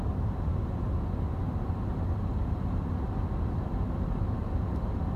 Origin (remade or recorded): recorded